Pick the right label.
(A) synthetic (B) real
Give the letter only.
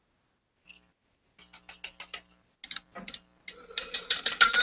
B